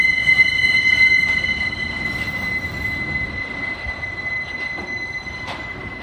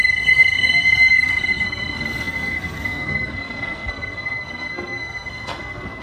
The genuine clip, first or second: first